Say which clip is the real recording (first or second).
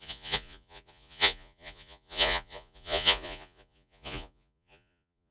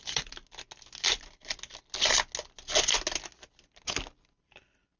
second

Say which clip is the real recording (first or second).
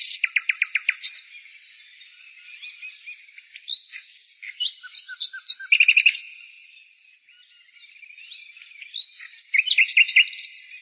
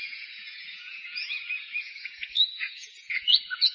first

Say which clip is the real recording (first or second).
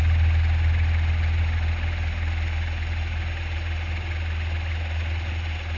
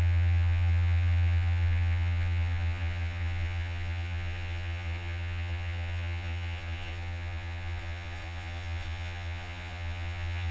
first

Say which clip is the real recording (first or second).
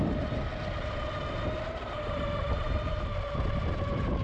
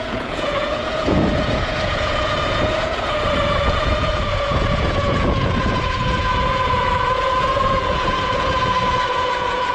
first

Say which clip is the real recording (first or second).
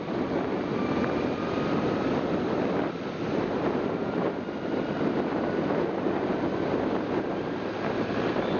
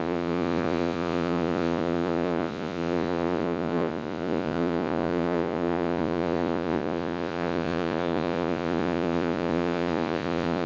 first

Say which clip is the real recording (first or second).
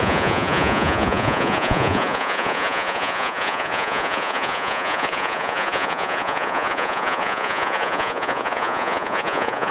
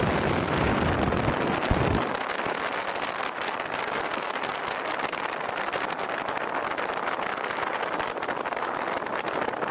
second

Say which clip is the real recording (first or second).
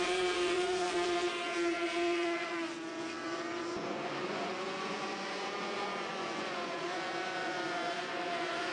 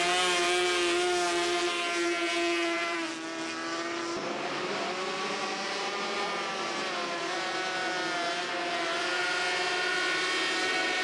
second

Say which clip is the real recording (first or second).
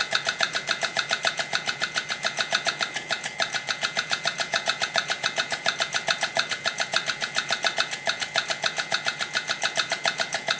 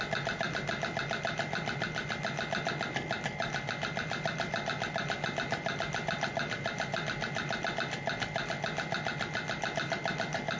second